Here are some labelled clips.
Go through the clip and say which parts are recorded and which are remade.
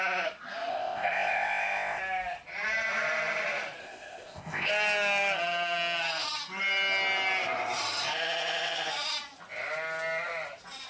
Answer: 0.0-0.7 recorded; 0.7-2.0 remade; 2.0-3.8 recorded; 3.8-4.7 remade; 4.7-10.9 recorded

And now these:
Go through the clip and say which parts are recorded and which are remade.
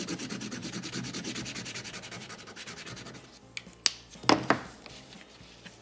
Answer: 0.0-5.8 recorded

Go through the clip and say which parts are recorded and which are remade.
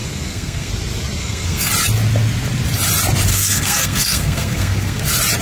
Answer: 0.0-0.7 remade; 0.7-1.2 recorded; 1.2-1.7 remade; 1.7-3.3 recorded; 3.3-5.0 remade; 5.0-5.4 recorded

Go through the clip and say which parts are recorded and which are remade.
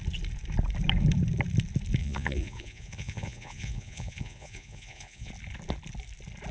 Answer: 0.0-2.0 recorded; 2.0-5.3 remade; 5.3-6.5 recorded